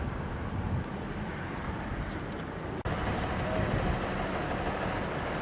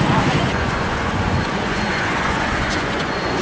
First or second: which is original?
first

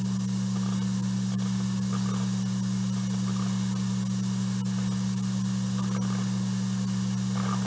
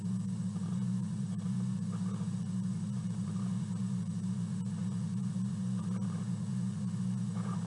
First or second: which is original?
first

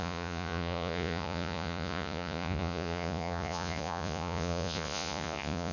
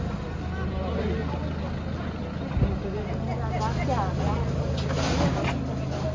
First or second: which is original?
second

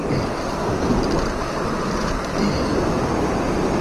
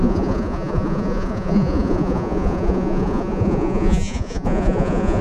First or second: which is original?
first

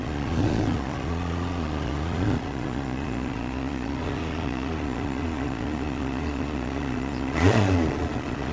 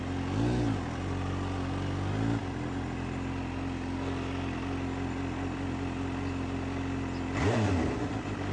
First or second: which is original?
second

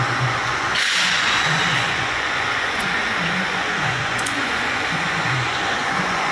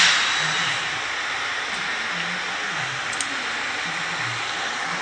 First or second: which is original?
second